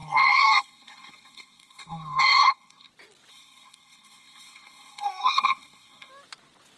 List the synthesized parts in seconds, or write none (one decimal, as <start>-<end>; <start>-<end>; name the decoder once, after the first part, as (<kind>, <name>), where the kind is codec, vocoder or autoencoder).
0.0-2.9 (codec, SNAC); 3.3-6.1